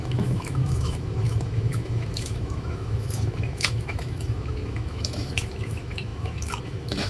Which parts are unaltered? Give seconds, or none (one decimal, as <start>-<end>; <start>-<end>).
none